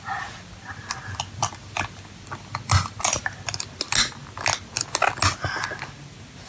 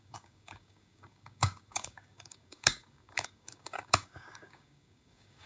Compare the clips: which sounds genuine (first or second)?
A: first